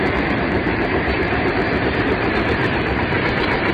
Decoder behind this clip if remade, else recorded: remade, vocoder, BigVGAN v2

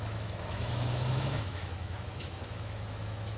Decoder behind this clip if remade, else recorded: remade, autoencoder, DAC-VAE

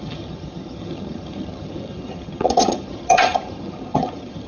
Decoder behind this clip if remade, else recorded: remade, vocoder, HiFi-GAN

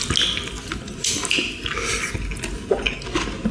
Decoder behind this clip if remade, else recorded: recorded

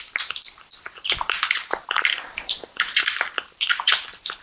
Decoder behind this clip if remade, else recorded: remade, vocoder, BigVGAN v2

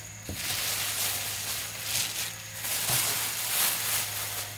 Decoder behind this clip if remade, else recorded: recorded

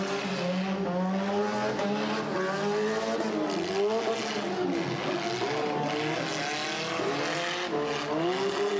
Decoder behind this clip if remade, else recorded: recorded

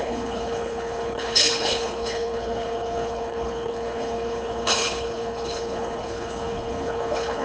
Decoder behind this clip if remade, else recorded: remade, codec, HILCodec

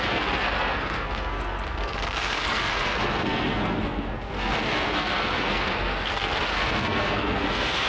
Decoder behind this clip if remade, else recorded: remade, codec, SNAC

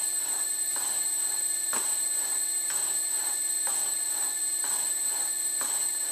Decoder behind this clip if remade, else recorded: remade, vocoder, BigVGAN v2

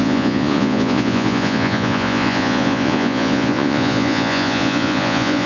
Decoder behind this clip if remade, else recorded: remade, vocoder, Vocos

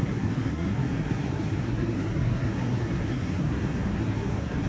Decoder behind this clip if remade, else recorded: remade, codec, SNAC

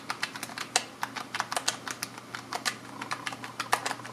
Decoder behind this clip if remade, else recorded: recorded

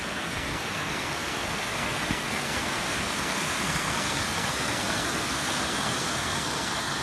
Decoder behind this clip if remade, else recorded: remade, codec, SNAC